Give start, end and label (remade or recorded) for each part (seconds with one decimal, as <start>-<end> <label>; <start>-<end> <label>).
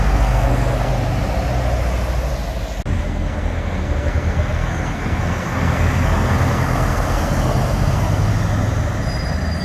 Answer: 0.0-0.9 remade; 0.9-3.0 recorded; 3.0-8.3 remade; 8.3-9.6 recorded